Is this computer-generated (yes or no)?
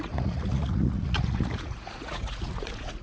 yes